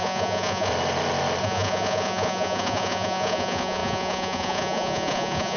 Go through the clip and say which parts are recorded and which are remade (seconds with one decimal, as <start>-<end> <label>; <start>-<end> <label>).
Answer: 0.0-0.7 remade; 0.7-1.4 recorded; 1.4-5.6 remade